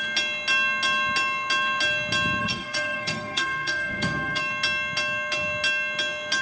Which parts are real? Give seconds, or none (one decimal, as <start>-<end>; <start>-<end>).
0.0-2.4; 4.4-6.4